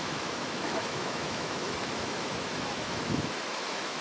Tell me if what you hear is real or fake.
fake